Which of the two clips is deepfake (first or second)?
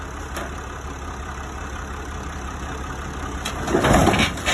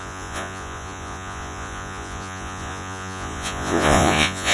second